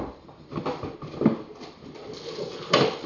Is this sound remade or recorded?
recorded